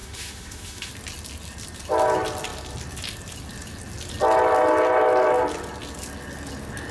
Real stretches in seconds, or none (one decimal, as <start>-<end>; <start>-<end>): 0.9-6.9